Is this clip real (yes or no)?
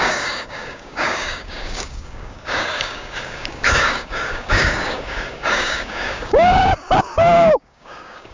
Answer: no